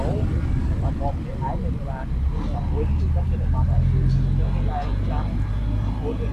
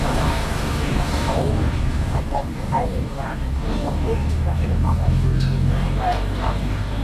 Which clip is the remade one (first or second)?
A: second